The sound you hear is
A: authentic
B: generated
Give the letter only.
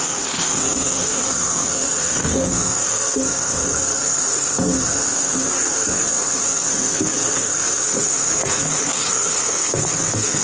B